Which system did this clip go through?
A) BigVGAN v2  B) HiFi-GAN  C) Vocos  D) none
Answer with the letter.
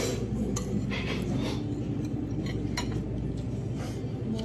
D